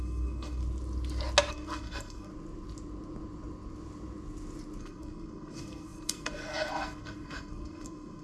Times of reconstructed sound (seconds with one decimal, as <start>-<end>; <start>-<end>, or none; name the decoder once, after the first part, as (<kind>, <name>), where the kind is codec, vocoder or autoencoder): 0.0-0.6 (codec, SNAC); 1.5-2.3; 4.8-8.2